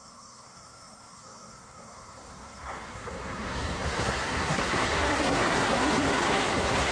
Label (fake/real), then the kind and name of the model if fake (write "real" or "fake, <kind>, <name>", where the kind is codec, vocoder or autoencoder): fake, codec, SNAC